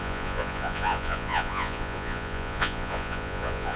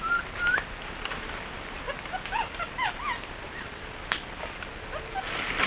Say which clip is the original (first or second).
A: second